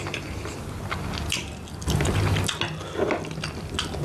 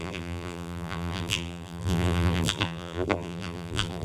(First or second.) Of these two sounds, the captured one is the first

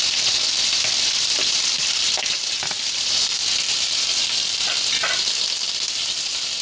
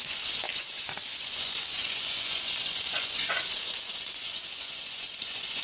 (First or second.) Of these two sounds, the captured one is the first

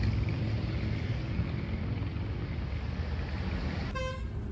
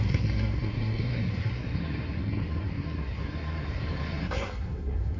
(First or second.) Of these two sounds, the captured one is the first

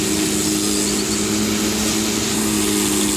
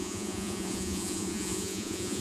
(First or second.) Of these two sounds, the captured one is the first